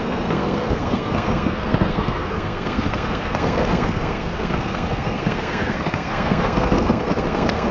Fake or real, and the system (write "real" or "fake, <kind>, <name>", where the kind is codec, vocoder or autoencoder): fake, codec, SNAC